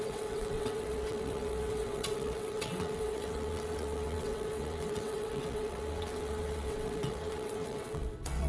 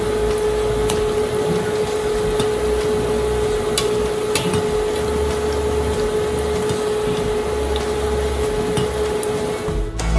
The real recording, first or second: second